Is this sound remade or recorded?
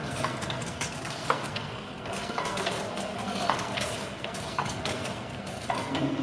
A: remade